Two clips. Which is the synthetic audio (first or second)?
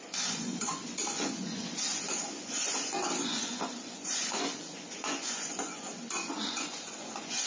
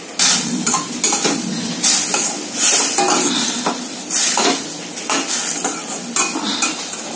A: first